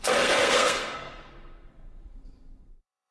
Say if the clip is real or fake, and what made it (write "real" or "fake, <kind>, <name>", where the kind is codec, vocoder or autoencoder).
fake, codec, SNAC